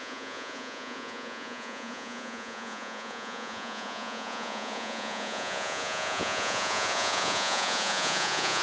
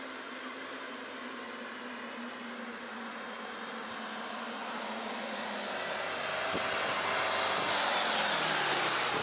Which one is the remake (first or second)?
first